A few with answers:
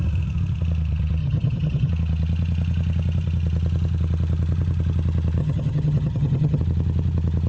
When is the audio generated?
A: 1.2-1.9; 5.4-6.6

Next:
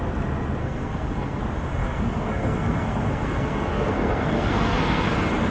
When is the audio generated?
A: 0.6-1.4; 1.8-5.1

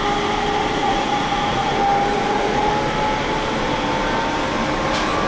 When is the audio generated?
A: 0.7-1.7; 2.1-2.7

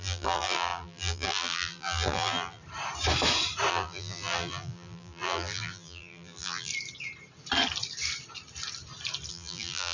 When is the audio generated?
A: 0.0-2.6; 3.7-6.7; 9.3-9.9

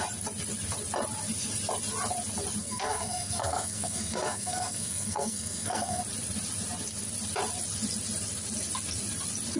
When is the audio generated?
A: 2.6-6.0